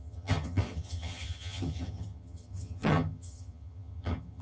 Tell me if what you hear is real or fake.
fake